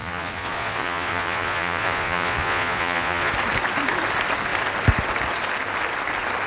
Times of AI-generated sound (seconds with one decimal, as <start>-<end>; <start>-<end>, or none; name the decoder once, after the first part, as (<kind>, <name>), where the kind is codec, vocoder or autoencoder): 0.0-3.3 (vocoder, Vocos)